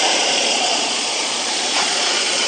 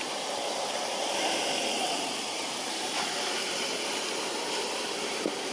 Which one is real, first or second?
second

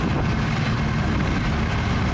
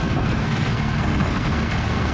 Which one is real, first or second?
first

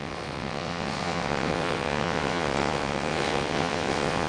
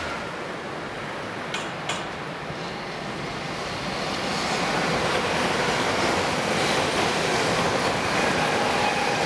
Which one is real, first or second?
second